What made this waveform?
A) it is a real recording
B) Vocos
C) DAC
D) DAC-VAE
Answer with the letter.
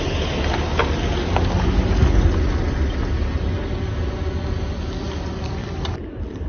A